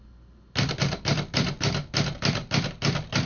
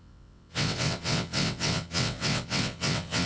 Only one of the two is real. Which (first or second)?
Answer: first